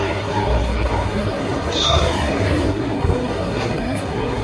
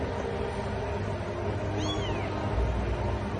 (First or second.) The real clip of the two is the second